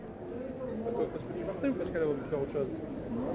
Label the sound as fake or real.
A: real